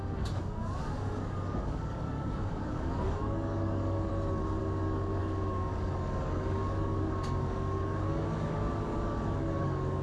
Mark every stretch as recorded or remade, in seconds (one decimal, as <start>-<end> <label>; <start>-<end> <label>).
0.0-4.1 remade; 4.1-4.6 recorded; 4.6-10.0 remade